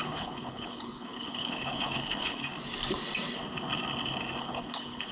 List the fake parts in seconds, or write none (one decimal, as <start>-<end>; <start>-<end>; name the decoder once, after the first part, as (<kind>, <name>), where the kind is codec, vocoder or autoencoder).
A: 0.0-2.5 (codec, HILCodec); 4.4-5.1